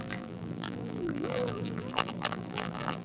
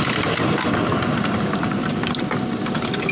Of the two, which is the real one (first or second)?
second